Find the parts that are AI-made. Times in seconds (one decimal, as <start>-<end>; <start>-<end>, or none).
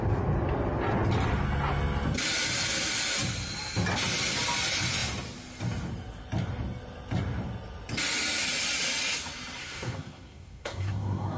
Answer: 9.6-11.4